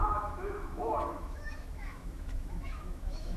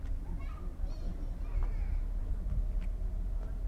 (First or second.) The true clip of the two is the second